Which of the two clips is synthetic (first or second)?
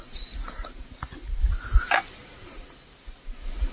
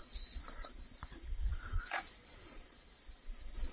second